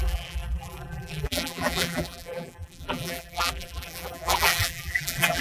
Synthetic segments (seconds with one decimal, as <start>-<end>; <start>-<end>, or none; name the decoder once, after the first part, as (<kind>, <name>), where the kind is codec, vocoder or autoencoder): 0.0-5.4 (vocoder, BigVGAN v2)